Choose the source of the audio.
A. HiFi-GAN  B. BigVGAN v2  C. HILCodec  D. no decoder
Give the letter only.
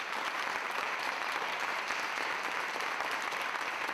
B